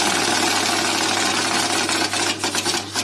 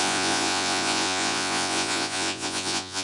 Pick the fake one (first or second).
second